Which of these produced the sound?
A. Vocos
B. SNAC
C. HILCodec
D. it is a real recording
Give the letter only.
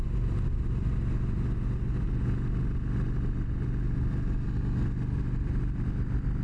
D